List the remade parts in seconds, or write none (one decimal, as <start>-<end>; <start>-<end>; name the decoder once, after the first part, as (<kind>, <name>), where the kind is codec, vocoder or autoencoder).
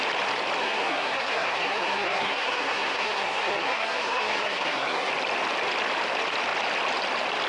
0.6-5.1 (codec, SNAC)